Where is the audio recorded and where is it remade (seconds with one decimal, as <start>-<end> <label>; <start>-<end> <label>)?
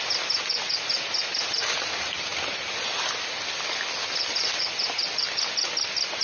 0.0-6.2 recorded